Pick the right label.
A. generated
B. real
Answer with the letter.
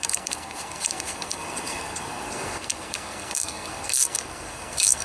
A